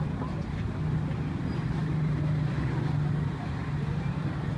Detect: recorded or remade recorded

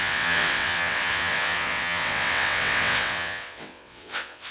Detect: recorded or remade remade